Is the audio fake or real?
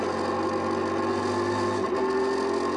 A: real